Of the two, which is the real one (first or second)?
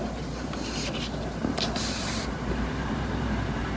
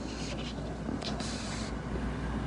second